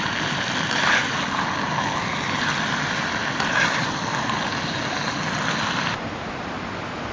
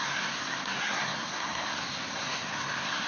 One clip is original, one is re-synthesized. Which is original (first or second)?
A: first